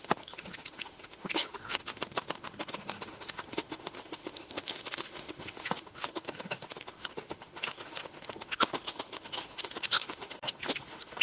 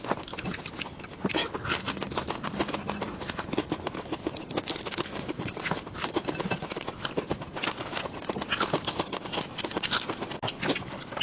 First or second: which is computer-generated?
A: first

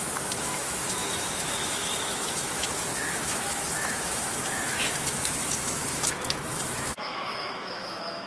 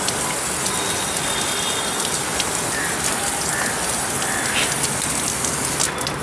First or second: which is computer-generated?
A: first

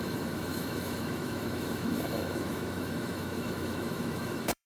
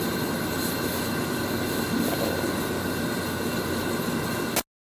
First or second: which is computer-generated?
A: first